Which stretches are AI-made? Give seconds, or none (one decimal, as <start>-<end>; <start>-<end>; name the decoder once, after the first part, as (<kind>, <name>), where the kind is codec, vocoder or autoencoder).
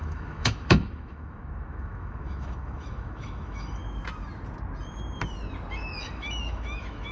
0.0-3.8 (autoencoder, DAC-VAE); 5.7-7.1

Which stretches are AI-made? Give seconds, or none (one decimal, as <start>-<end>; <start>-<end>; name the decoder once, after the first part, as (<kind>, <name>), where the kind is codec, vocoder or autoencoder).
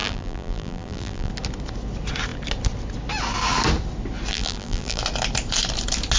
0.0-1.3 (vocoder, BigVGAN v2); 4.3-5.0